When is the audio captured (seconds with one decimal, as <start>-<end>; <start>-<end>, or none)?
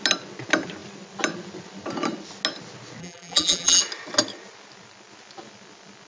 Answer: 0.0-3.0; 3.8-6.1